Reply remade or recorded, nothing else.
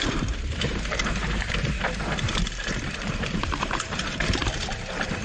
remade